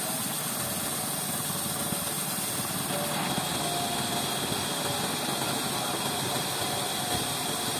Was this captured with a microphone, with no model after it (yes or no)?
yes